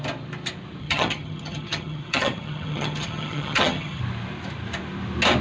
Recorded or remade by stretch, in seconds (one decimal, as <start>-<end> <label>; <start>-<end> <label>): 0.0-0.8 recorded; 0.8-4.0 remade; 4.0-5.4 recorded

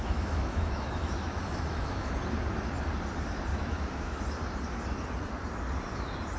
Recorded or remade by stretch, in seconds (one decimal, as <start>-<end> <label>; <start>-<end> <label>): 0.0-2.1 remade; 2.1-3.5 recorded; 3.5-4.2 remade; 4.2-6.4 recorded

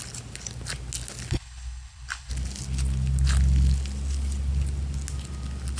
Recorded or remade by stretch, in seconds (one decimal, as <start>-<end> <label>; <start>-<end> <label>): 0.0-1.3 recorded; 1.3-2.3 remade; 2.3-5.8 recorded

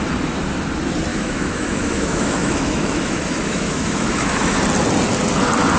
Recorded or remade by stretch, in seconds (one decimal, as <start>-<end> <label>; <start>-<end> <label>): 0.0-1.1 recorded; 1.1-4.6 remade; 4.6-5.8 recorded

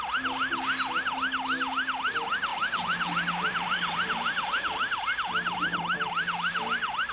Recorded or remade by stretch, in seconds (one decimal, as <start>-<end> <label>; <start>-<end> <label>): 0.0-2.5 recorded; 2.5-7.1 remade